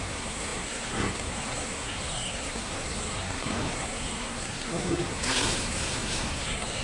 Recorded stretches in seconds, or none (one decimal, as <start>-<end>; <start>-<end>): none